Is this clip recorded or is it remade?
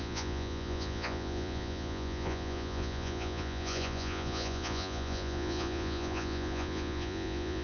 remade